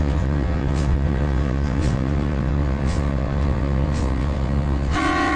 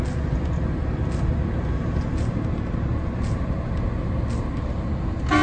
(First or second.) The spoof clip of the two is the first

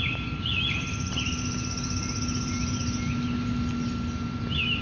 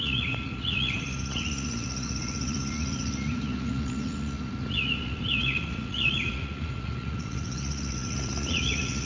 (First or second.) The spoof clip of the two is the second